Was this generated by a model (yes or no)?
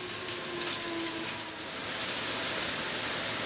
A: no